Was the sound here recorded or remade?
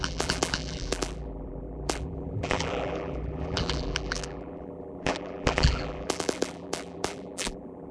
remade